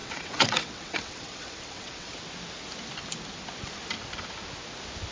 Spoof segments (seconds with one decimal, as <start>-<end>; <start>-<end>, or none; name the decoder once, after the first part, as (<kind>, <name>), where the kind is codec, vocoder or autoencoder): 0.0-2.1 (vocoder, WaveNeXt)